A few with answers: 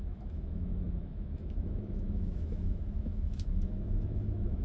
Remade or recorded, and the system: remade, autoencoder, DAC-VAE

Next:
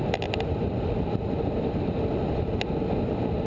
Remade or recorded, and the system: recorded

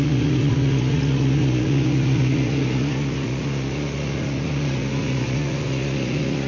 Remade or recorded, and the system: remade, vocoder, Vocos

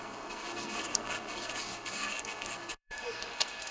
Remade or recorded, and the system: remade, codec, SNAC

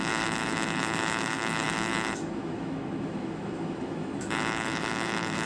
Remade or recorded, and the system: remade, autoencoder, DAC-VAE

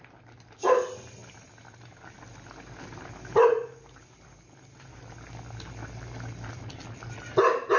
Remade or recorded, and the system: recorded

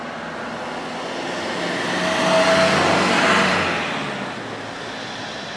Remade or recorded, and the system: recorded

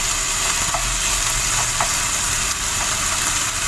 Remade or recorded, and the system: recorded